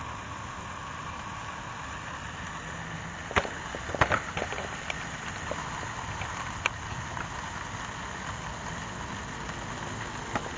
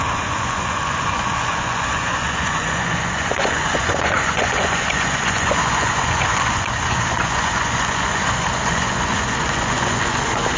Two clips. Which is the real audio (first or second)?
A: first